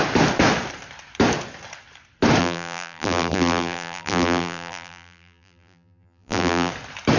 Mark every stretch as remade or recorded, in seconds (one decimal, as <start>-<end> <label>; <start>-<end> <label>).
0.0-2.4 recorded; 2.4-6.7 remade; 6.7-7.2 recorded